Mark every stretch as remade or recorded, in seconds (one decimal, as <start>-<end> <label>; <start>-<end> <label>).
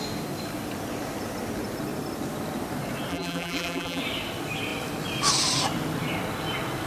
0.0-3.1 recorded; 3.1-4.0 remade; 4.0-6.9 recorded